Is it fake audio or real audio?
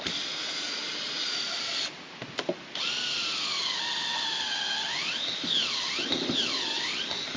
real